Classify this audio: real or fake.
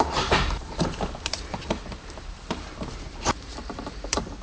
fake